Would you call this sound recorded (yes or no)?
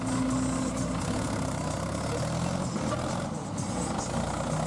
yes